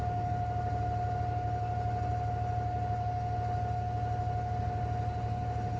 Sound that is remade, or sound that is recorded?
recorded